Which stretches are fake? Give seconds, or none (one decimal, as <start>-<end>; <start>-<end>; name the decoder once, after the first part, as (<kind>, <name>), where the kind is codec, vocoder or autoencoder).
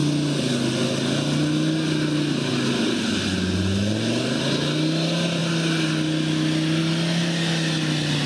none